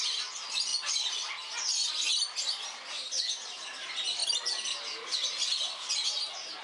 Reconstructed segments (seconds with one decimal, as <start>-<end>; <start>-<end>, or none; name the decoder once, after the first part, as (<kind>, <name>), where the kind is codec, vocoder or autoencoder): none